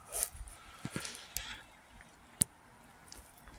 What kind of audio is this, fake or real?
real